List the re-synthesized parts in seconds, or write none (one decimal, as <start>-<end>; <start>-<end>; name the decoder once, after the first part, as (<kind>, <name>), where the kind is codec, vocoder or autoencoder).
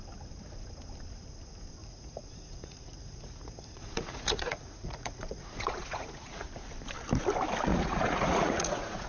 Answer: 1.8-6.5 (vocoder, Vocos); 7.7-9.1